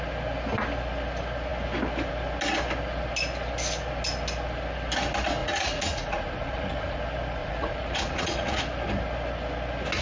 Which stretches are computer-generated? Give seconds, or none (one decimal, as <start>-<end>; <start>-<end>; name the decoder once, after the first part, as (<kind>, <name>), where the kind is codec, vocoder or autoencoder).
5.4-7.0 (vocoder, Vocos); 7.4-8.6